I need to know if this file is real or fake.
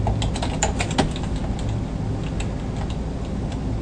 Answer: real